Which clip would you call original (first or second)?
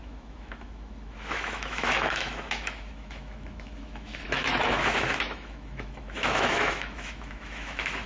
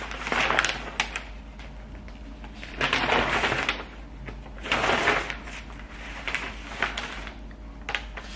second